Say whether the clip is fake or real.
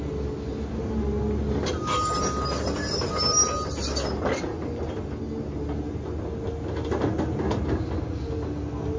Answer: real